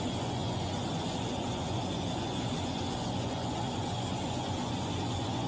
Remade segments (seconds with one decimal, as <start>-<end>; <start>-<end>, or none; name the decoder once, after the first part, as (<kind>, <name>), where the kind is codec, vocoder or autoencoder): 0.0-5.5 (vocoder, Vocos)